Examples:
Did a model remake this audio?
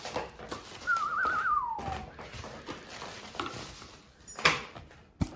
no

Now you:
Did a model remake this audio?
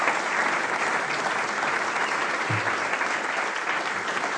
no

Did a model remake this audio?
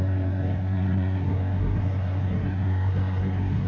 yes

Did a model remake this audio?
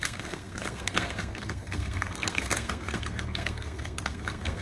yes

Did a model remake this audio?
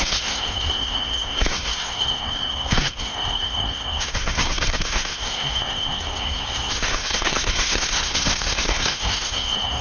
yes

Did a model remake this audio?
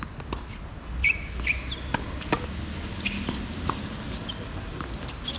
no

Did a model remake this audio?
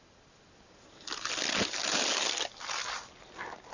no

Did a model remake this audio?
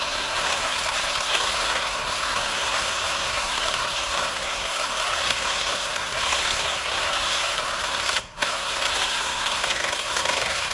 yes